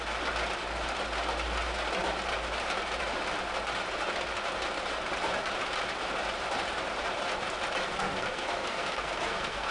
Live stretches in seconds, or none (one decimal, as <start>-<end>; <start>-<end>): 0.0-7.8